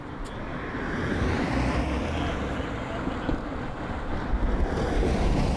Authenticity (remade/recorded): recorded